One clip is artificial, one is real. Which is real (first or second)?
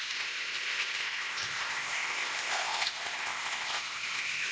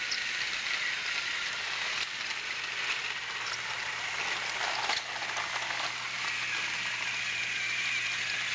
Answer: second